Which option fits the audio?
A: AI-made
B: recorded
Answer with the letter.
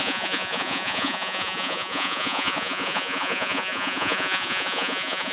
A